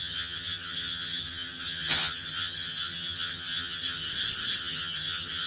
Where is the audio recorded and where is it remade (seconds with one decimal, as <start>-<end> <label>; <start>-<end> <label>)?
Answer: 0.0-4.1 remade; 4.1-4.6 recorded; 4.6-5.5 remade